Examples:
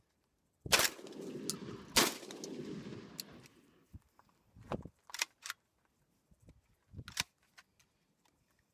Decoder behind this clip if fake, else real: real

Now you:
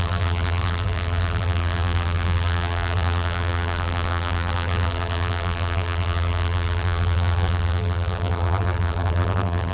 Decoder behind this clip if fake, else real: fake, vocoder, BigVGAN v2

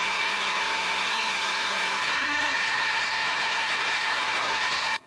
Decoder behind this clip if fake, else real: fake, codec, SNAC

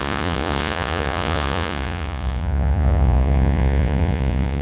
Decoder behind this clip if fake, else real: fake, vocoder, Vocos